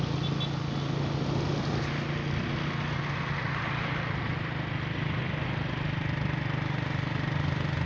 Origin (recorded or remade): recorded